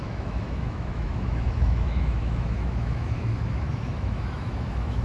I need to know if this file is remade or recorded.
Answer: remade